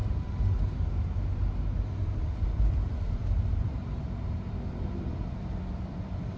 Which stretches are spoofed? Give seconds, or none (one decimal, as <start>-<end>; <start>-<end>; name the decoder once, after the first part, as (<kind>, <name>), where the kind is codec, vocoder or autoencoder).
2.7-6.4 (vocoder, BigVGAN v2)